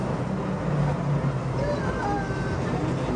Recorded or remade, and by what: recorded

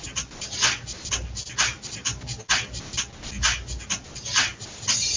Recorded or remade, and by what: recorded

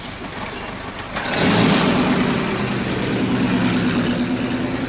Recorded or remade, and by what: recorded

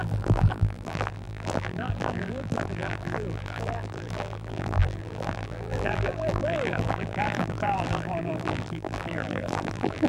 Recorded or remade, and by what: remade, vocoder, BigVGAN v2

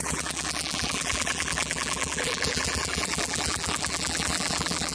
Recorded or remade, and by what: remade, vocoder, BigVGAN v2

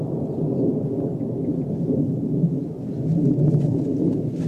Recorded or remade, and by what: recorded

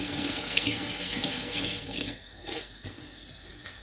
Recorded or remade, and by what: remade, codec, SNAC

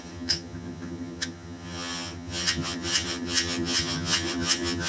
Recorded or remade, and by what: remade, vocoder, HiFi-GAN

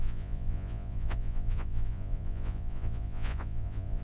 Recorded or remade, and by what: remade, vocoder, Vocos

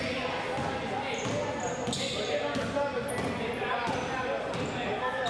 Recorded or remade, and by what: recorded